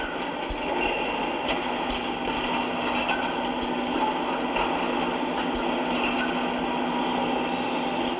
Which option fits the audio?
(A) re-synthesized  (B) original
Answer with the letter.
B